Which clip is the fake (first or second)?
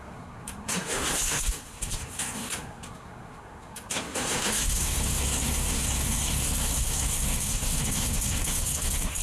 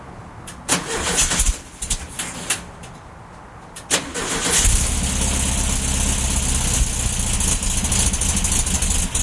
first